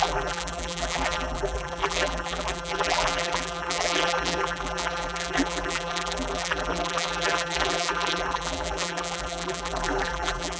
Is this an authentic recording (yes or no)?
no